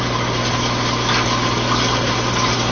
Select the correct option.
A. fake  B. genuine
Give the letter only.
B